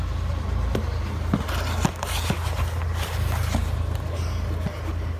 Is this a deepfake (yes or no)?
no